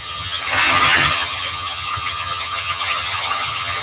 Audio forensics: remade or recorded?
remade